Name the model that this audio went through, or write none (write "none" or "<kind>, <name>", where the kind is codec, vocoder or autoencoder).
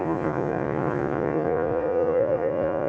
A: vocoder, Vocos